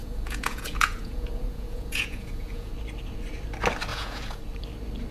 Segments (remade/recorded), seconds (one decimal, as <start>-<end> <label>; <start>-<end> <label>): 0.0-2.7 remade; 2.7-3.9 recorded; 3.9-4.4 remade; 4.4-5.1 recorded